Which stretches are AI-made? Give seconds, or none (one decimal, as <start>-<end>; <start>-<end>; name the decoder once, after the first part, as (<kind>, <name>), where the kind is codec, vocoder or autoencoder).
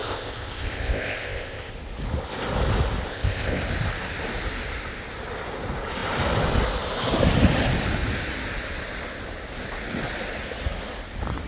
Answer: 0.0-1.7 (codec, ZipCodec); 3.1-3.6